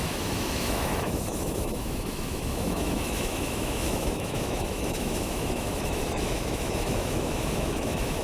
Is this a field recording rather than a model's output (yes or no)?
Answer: no